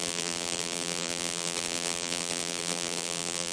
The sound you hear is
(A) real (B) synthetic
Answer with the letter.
B